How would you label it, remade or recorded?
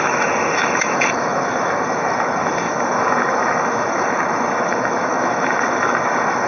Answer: remade